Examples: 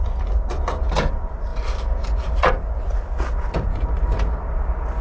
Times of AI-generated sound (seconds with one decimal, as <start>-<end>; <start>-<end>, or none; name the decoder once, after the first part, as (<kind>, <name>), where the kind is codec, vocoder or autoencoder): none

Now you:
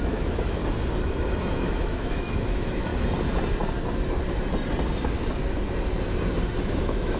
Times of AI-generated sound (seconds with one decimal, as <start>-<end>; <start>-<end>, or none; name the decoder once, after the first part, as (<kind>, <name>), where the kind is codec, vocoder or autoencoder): 0.0-0.6 (autoencoder, DAC-VAE); 1.5-2.9; 6.6-7.2

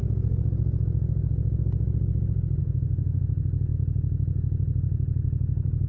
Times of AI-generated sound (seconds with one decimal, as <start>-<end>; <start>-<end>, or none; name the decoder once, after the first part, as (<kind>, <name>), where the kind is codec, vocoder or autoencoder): 2.6-3.2 (autoencoder, DAC-VAE)

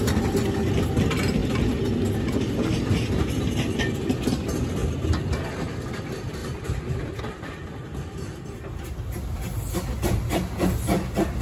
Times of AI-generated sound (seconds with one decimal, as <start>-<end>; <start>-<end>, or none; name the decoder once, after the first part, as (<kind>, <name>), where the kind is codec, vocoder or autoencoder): 6.4-7.2 (vocoder, BigVGAN v2)